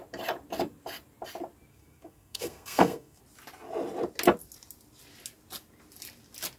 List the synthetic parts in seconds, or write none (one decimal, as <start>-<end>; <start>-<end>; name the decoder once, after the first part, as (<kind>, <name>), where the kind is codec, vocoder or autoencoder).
1.7-3.2 (codec, SNAC)